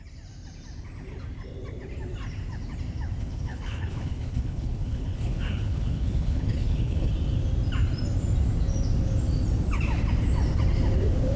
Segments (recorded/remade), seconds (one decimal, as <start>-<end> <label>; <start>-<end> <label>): 0.0-3.2 recorded; 3.2-7.1 remade; 7.1-11.4 recorded